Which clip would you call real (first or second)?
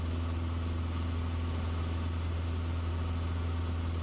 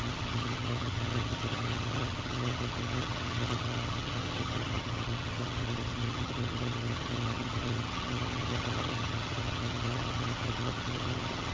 first